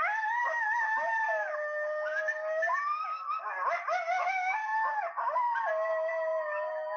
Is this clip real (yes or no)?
yes